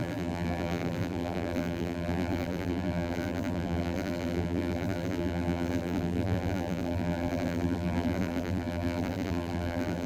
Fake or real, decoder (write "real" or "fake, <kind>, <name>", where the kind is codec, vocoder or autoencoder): fake, vocoder, BigVGAN v2